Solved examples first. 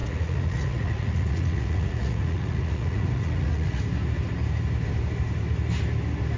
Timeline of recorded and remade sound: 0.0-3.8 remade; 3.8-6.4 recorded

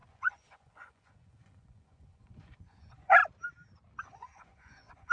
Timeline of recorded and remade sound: 0.0-3.2 remade; 3.2-4.0 recorded; 4.0-5.1 remade

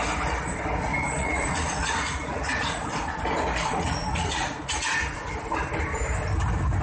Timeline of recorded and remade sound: 0.0-0.9 recorded; 0.9-2.9 remade; 2.9-3.7 recorded; 3.7-5.3 remade; 5.3-6.8 recorded

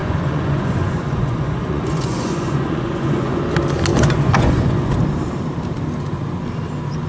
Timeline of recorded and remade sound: 0.0-3.4 remade; 3.4-3.9 recorded; 3.9-4.9 remade; 4.9-7.1 recorded